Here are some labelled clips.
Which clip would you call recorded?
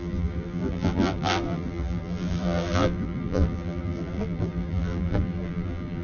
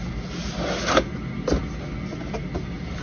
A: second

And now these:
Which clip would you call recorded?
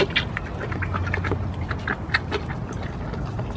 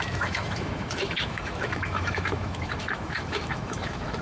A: first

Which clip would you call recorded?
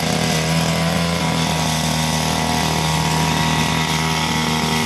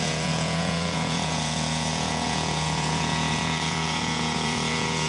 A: first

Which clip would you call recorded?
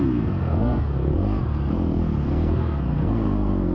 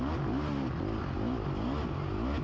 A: second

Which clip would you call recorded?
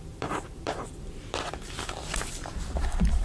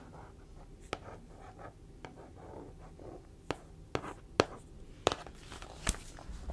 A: second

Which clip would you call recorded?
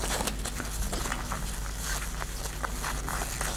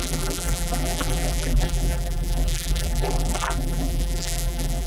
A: first